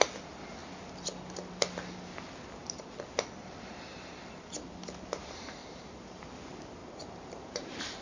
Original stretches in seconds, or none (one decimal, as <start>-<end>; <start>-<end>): 0.0-5.6; 6.2-6.8